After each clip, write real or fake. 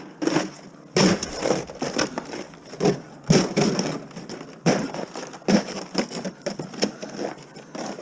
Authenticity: real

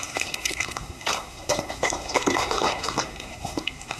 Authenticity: fake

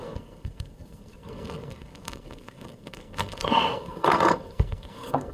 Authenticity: fake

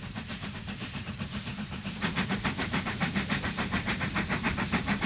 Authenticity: fake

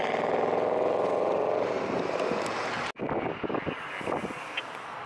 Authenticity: real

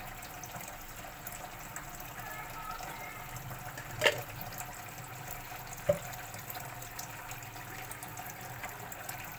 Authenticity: real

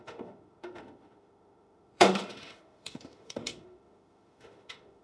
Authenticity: fake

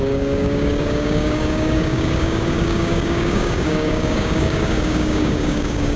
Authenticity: fake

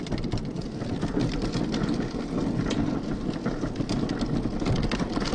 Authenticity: real